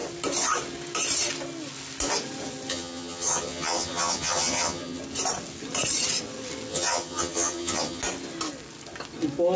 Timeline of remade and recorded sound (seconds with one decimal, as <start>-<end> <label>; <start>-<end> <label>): 0.0-2.7 recorded; 2.7-5.0 remade; 5.0-6.7 recorded; 6.7-8.0 remade; 8.0-9.6 recorded